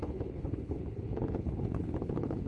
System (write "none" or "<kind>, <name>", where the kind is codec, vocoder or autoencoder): codec, HILCodec